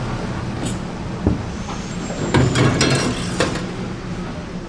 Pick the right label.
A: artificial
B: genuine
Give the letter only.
B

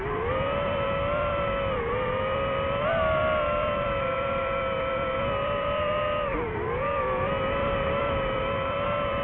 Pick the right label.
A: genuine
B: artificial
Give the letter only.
B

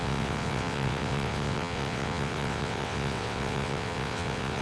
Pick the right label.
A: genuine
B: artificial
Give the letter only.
B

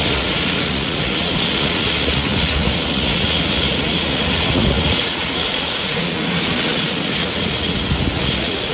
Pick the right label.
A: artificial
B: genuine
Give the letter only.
A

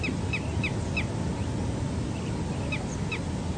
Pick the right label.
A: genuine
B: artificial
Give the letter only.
A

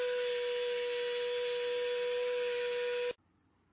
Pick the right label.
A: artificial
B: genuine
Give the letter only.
B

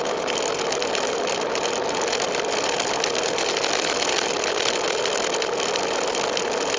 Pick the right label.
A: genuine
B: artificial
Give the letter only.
A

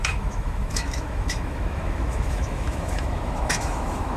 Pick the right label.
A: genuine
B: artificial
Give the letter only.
B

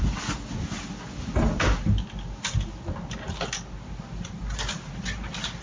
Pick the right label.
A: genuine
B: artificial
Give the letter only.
A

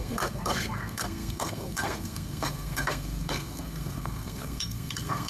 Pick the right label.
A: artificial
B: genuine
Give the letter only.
A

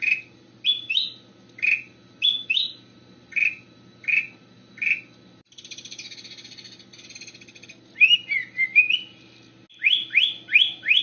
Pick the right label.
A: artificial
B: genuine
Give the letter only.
B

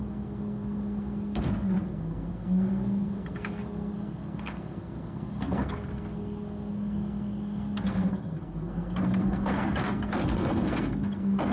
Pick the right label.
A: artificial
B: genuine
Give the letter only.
A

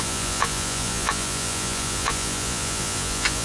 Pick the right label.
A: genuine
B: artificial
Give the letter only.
B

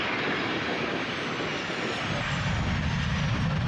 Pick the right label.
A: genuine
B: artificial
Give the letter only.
A